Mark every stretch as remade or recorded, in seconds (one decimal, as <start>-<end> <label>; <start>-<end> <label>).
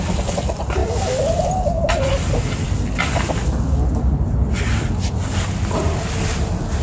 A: 0.0-6.8 recorded